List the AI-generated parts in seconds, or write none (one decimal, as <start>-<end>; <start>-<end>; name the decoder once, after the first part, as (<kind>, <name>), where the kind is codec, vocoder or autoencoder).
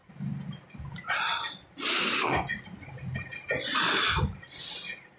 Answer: none